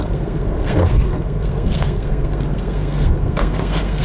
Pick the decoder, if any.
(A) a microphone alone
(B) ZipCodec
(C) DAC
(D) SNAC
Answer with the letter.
D